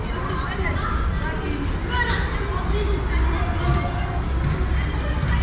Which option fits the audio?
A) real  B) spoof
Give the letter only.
A